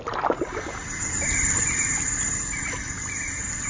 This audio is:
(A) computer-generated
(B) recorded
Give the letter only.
B